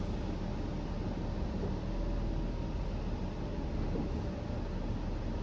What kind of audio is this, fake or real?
real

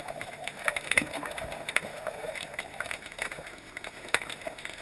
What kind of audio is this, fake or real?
fake